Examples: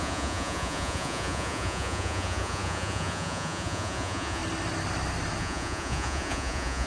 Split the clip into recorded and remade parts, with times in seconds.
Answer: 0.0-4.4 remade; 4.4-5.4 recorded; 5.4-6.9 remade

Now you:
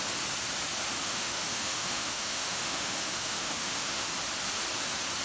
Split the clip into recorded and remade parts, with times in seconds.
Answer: 0.0-1.0 recorded; 1.0-4.1 remade; 4.1-5.2 recorded

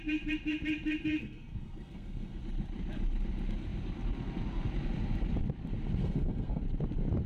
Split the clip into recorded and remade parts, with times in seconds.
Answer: 0.0-1.2 recorded; 1.2-2.4 remade; 2.4-6.0 recorded; 6.0-6.6 remade; 6.6-7.3 recorded

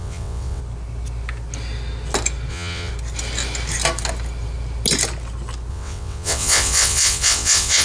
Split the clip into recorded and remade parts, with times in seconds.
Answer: 0.0-0.6 remade; 0.6-2.5 recorded; 2.5-2.9 remade; 2.9-5.7 recorded; 5.7-7.8 remade

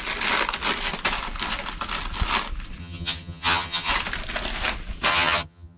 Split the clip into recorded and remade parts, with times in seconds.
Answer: 0.0-2.8 recorded; 2.8-3.9 remade; 3.9-5.1 recorded; 5.1-5.8 remade

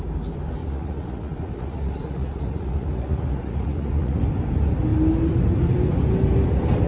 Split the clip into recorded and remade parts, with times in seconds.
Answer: 0.0-0.6 recorded; 0.6-4.2 remade; 4.2-6.9 recorded

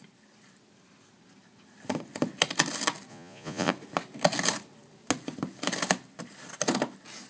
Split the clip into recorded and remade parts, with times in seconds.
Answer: 0.0-3.1 recorded; 3.1-3.7 remade; 3.7-7.3 recorded

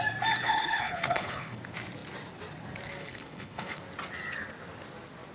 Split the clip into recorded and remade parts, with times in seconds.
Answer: 0.0-0.4 recorded; 0.4-1.6 remade; 1.6-3.0 recorded; 3.0-3.8 remade; 3.8-5.3 recorded